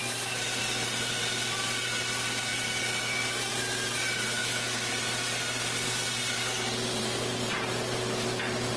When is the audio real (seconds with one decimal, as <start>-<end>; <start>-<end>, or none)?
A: 0.0-4.4; 4.9-8.8